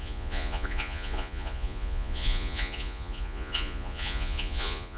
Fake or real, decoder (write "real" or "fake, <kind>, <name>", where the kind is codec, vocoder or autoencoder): fake, vocoder, Vocos